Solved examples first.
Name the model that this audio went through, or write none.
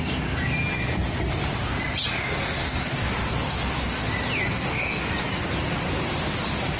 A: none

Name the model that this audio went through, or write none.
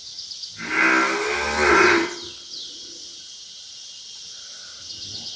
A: none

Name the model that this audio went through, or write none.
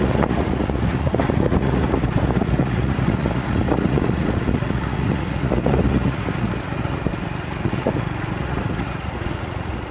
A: vocoder, Vocos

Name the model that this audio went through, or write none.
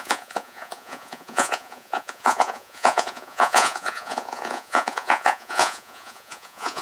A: vocoder, Vocos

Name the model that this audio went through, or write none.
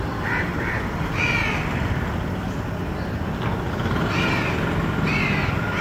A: none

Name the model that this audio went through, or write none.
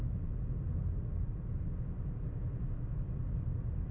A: none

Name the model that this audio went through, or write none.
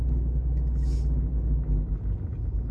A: none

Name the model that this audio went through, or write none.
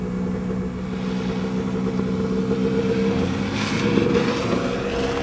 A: none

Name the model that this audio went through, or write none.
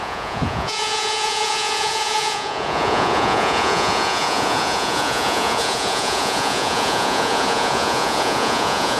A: vocoder, Vocos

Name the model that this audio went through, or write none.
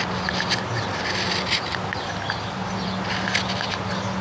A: none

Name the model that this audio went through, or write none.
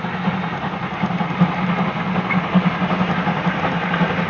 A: none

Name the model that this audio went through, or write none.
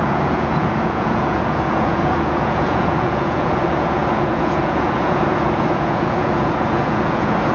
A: vocoder, Vocos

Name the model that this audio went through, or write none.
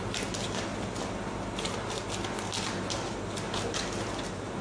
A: none